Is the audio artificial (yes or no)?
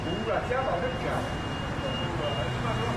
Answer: no